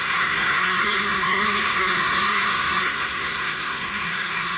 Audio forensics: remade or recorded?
remade